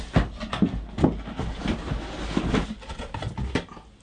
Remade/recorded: recorded